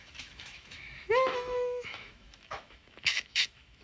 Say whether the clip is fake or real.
fake